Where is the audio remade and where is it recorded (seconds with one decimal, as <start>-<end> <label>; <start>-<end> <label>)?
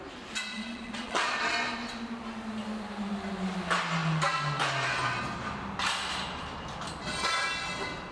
0.0-0.5 recorded; 0.5-1.3 remade; 1.3-8.1 recorded